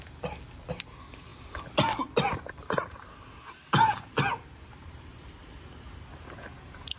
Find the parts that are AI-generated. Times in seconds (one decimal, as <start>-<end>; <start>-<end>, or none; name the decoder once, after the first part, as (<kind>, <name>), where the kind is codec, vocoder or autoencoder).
none

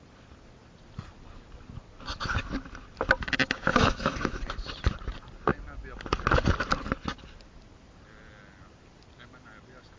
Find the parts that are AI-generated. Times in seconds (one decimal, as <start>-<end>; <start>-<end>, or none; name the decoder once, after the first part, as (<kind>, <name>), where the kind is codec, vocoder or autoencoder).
3.7-4.4 (autoencoder, DAC-VAE)

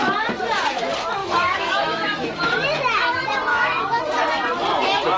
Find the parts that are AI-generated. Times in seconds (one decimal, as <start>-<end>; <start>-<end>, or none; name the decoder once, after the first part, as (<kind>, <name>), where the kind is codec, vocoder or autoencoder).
1.2-2.3 (autoencoder, DAC-VAE); 3.5-4.0

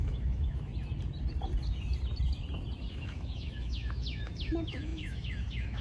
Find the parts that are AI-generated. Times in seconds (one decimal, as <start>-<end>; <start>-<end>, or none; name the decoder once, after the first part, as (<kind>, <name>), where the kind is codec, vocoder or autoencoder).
0.0-0.7 (autoencoder, DAC-VAE); 2.9-5.8